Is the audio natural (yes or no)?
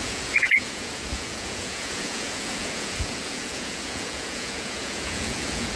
no